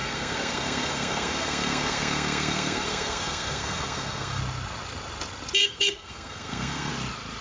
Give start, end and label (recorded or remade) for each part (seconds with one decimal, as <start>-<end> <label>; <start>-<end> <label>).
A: 0.0-4.4 remade; 4.4-5.6 recorded; 5.6-6.9 remade; 6.9-7.4 recorded